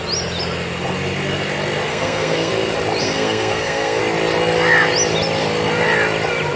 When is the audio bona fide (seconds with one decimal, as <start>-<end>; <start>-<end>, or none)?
0.0-1.9; 2.5-3.0; 4.0-6.6

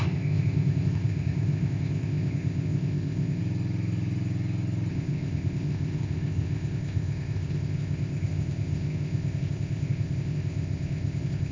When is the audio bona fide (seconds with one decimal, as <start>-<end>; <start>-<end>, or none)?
3.4-4.9

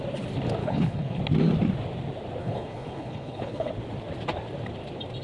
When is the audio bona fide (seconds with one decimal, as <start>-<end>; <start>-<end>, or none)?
0.0-0.6; 1.2-2.4; 3.7-5.2

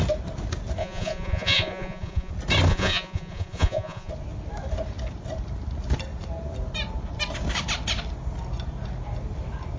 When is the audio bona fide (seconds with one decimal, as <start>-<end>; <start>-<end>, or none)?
0.0-0.8; 2.3-2.7; 4.1-9.8

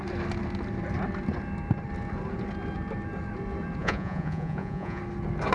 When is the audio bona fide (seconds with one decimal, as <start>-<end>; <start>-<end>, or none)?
0.0-3.8; 5.0-5.5

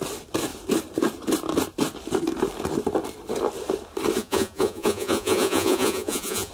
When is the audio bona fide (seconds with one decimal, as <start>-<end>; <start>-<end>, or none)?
0.0-4.2

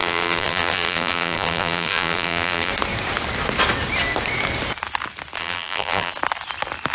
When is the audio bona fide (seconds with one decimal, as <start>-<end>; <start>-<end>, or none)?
2.7-5.4; 6.1-6.9

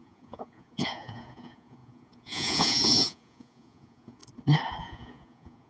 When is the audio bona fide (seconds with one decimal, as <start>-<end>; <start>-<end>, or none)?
4.2-4.8